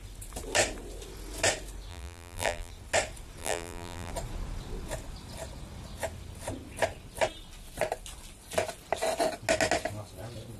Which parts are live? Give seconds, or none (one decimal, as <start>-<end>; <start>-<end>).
0.0-1.9; 2.7-3.4; 4.1-10.6